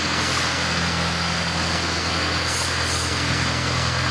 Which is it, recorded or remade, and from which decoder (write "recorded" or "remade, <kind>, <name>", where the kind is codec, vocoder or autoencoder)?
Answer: remade, codec, SNAC